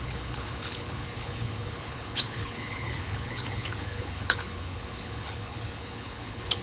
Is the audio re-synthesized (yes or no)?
yes